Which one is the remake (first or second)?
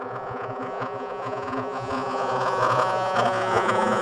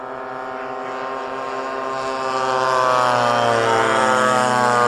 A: first